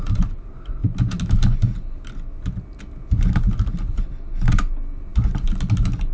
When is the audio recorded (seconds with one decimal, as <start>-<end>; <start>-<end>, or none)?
0.0-5.1; 5.6-6.1